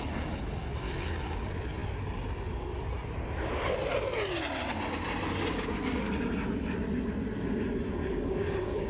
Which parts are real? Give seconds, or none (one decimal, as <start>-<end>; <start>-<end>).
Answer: 0.0-5.5; 6.3-8.1